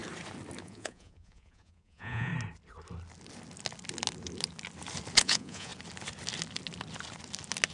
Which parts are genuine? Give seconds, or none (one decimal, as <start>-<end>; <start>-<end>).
0.0-0.6; 2.3-5.2; 5.7-7.7